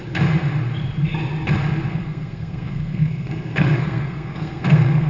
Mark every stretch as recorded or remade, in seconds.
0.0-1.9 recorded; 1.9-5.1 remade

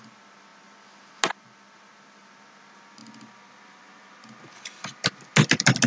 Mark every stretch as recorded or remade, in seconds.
0.0-5.9 recorded

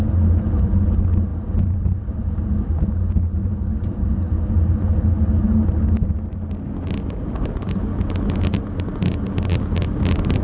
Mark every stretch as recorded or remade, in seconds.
0.0-1.3 recorded; 1.3-2.8 remade; 2.8-3.4 recorded; 3.4-4.3 remade; 4.3-10.4 recorded

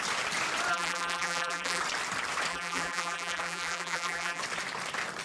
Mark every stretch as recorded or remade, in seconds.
0.0-0.7 recorded; 0.7-1.8 remade; 1.8-2.5 recorded; 2.5-4.4 remade; 4.4-5.2 recorded

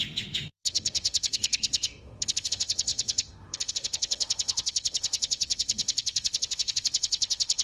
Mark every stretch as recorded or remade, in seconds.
0.0-7.6 remade

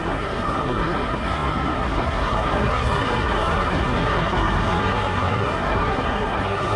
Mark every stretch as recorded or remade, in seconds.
0.0-6.8 remade

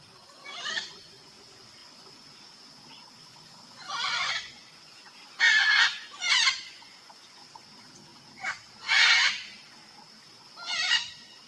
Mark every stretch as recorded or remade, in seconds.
0.0-8.1 remade; 8.1-10.3 recorded; 10.3-11.5 remade

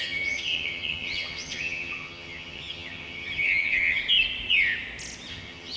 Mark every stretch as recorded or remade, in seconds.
0.0-4.0 remade; 4.0-5.3 recorded; 5.3-5.8 remade